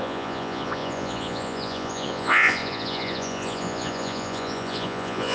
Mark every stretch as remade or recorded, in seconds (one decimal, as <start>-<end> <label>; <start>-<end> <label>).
0.0-5.3 remade